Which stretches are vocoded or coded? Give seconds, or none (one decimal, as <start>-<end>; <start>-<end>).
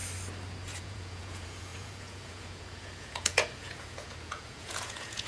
0.8-5.3